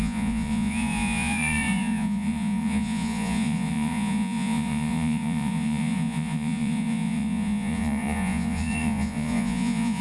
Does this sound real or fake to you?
fake